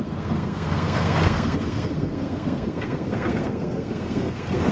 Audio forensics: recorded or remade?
remade